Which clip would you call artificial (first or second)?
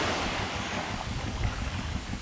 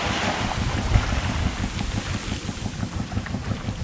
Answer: first